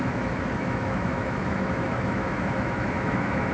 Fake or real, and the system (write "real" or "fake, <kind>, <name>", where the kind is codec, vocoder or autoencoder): fake, autoencoder, DAC-VAE